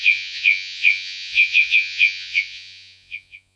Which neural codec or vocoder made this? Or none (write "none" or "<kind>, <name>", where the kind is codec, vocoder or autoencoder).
vocoder, Vocos